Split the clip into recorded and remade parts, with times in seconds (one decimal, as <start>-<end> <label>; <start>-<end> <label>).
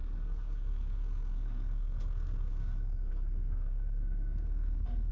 0.0-5.1 remade